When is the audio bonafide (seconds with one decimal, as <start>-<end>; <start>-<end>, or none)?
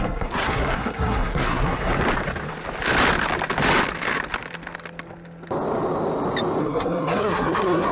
1.9-6.6